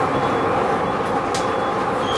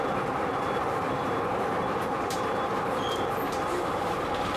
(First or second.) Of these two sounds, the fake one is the second